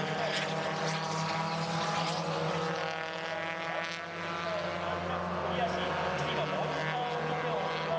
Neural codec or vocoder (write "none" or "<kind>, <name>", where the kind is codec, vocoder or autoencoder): none